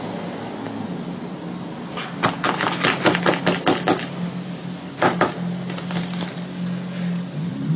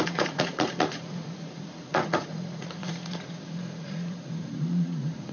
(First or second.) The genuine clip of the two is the first